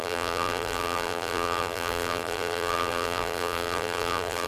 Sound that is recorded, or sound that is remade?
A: remade